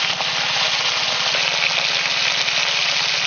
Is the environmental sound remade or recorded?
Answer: recorded